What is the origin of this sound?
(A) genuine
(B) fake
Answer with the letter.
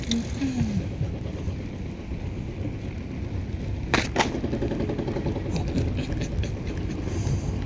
A